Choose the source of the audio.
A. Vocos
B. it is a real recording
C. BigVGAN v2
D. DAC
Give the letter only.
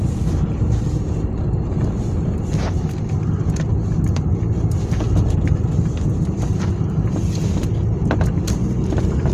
B